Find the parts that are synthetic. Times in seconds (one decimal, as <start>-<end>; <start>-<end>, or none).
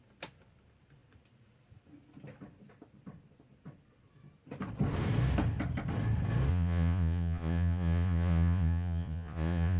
6.5-9.8